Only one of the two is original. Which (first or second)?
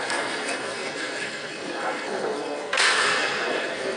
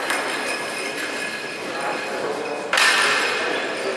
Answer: second